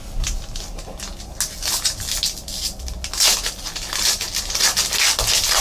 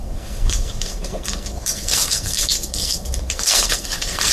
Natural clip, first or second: first